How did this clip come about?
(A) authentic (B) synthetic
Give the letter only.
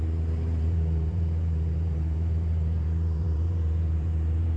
B